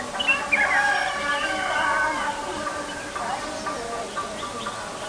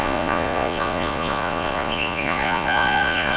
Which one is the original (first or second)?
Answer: first